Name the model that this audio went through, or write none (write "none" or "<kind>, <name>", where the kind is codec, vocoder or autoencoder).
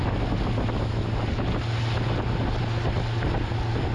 none